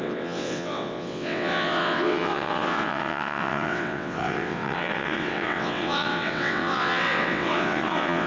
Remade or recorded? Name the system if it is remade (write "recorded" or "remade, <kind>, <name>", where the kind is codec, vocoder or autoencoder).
remade, vocoder, WaveNeXt